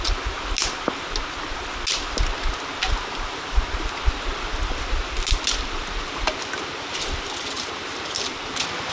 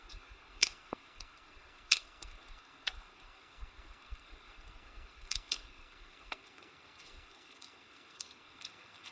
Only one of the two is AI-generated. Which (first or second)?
second